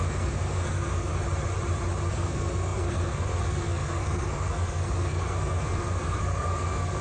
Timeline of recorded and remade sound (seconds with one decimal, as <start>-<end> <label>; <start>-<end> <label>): 0.0-1.1 remade; 1.1-2.1 recorded; 2.1-7.0 remade